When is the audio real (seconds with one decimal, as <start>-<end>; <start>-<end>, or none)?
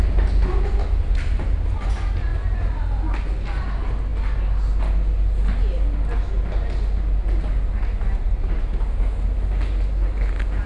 0.0-10.7